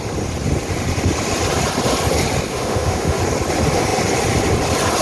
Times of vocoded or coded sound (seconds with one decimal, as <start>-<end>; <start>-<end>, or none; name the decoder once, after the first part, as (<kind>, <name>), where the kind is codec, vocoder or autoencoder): 2.5-3.2 (autoencoder, DAC-VAE)